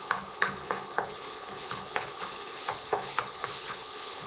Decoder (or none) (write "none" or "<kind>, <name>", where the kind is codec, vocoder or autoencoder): codec, HILCodec